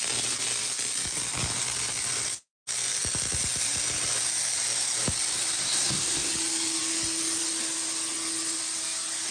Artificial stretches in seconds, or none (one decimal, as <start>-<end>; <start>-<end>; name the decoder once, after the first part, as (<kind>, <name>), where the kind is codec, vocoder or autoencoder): 5.6-6.3 (codec, SNAC)